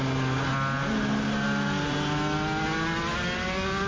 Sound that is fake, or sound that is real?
real